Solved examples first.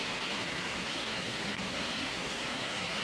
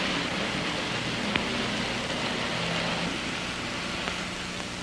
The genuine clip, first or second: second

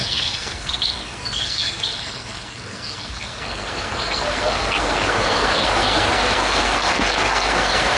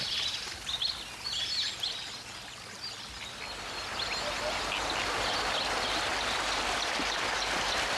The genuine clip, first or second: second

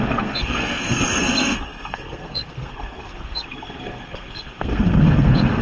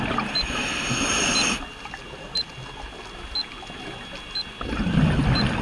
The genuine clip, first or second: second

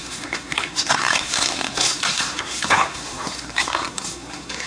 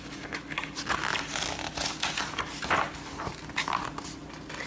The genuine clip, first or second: second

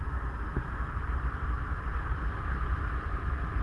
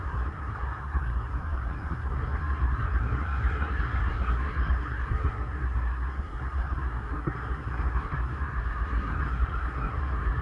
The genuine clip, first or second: first